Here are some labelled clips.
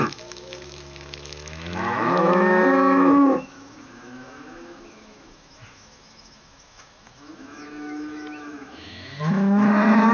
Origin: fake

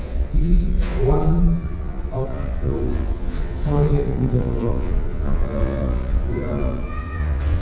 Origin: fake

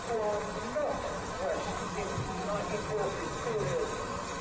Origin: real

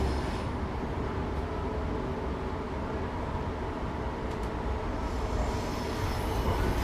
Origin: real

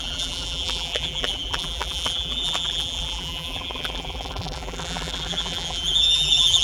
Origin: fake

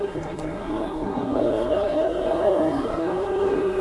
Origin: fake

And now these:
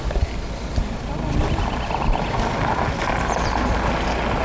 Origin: real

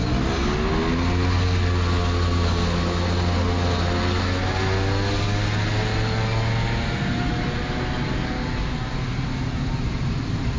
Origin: real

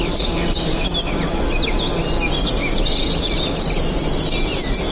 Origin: real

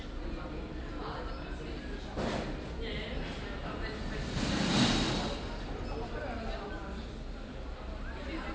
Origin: real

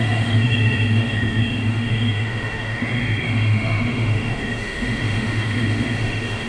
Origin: fake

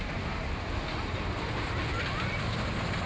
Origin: real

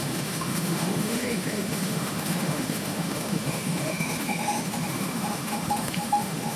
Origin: fake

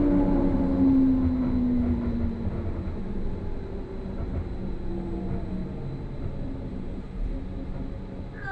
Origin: real